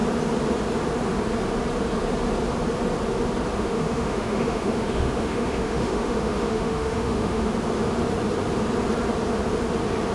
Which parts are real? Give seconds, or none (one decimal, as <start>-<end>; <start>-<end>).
0.0-3.6; 7.5-10.1